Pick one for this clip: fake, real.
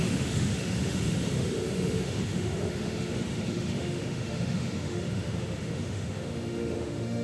fake